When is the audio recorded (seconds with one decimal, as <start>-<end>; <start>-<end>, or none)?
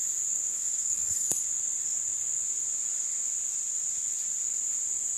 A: 0.0-0.5; 1.4-5.2